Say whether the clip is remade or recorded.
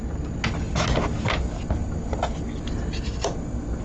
recorded